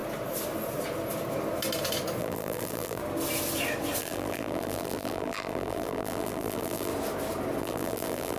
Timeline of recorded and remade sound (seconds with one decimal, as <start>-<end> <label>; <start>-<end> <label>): 0.0-2.2 recorded; 2.2-3.0 remade; 3.0-4.0 recorded; 4.0-6.9 remade; 6.9-7.6 recorded; 7.6-8.4 remade